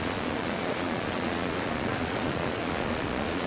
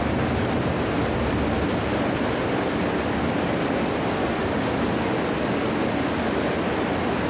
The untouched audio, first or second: second